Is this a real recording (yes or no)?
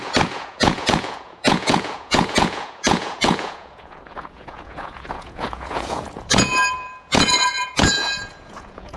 no